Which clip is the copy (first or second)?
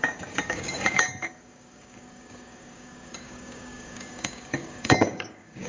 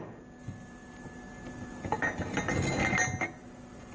first